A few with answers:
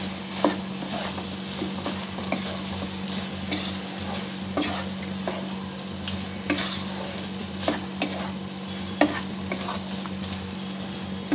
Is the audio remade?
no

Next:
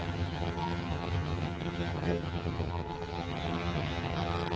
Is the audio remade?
yes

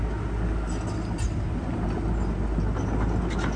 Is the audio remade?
no